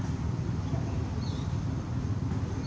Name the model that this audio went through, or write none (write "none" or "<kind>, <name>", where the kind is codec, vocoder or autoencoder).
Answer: none